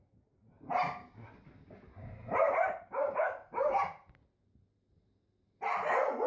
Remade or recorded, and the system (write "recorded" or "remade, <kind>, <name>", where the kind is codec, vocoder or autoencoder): recorded